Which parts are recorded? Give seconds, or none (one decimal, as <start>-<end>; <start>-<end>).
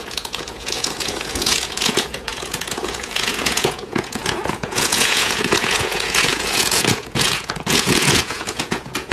none